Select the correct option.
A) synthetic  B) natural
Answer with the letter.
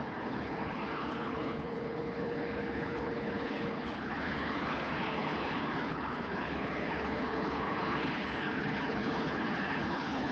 A